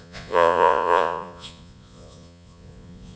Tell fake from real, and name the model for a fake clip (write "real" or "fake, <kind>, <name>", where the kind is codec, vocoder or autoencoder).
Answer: fake, vocoder, Vocos